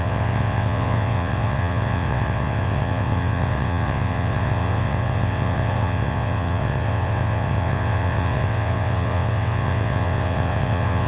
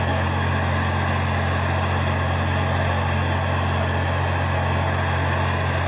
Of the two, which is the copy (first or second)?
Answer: first